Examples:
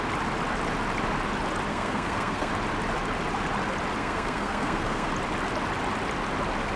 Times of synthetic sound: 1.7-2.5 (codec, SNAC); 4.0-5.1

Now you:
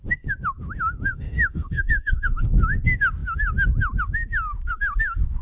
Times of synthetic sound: 1.1-2.5 (autoencoder, DAC-VAE)

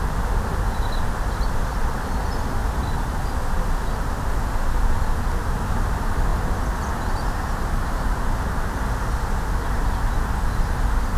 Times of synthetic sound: none

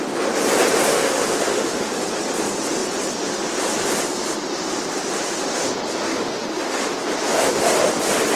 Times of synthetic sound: 0.9-1.9 (autoencoder, DAC-VAE); 6.1-6.9

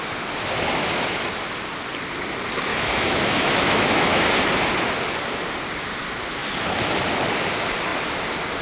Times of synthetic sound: 2.7-4.2 (autoencoder, DAC-VAE)

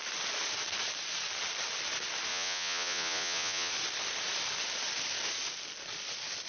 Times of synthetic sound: 2.3-3.7 (vocoder, Vocos)

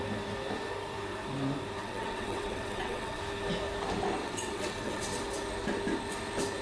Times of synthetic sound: 1.8-3.2 (vocoder, WaveNeXt); 4.2-5.2

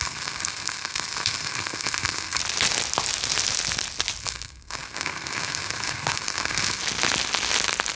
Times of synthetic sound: 0.0-2.4 (codec, SNAC); 4.2-6.8